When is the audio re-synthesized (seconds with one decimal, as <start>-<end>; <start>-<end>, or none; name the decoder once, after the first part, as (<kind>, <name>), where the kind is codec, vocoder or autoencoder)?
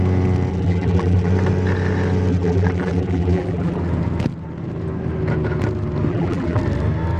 0.5-1.3 (vocoder, BigVGAN v2); 2.3-3.8; 6.1-6.6